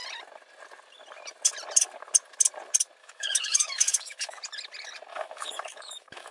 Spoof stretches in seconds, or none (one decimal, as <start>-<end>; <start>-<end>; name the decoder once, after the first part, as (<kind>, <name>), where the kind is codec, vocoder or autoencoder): 3.0-4.4 (autoencoder, DAC-VAE); 5.1-6.3